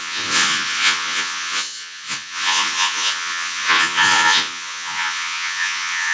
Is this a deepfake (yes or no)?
yes